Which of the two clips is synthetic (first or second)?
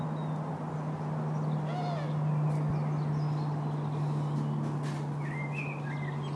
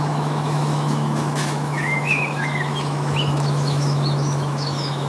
second